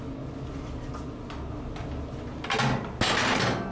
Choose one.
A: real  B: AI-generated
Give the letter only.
A